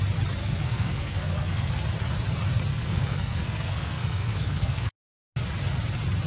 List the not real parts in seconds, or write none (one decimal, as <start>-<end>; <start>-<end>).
0.4-1.7; 2.7-4.9